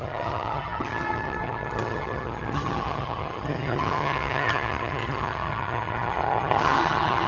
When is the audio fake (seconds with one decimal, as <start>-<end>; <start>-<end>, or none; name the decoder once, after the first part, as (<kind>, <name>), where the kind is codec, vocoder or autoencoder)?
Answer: 0.0-7.3 (vocoder, HiFi-GAN)